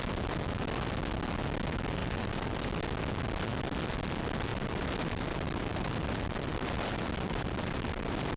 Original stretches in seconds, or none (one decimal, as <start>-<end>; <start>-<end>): 0.0-2.0; 2.7-4.5